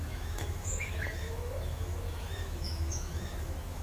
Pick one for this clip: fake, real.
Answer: fake